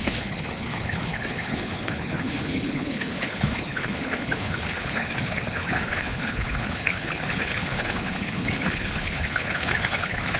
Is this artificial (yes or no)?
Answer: yes